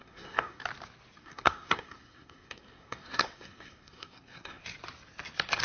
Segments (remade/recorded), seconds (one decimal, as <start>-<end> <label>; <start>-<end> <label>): 0.0-0.6 remade; 0.6-1.2 recorded; 1.2-4.6 remade; 4.6-5.6 recorded